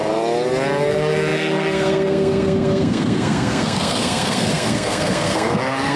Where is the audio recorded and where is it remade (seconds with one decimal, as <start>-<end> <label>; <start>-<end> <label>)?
0.0-0.9 recorded; 0.9-6.0 remade